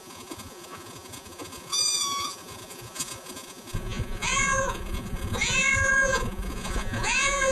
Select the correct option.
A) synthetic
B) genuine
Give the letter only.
A